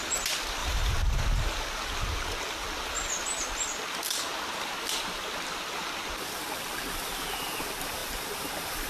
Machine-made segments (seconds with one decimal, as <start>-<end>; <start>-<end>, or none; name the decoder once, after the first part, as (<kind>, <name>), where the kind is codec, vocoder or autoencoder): 0.6-1.2 (vocoder, BigVGAN v2); 8.0-8.9